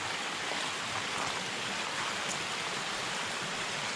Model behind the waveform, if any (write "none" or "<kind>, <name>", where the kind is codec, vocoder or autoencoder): none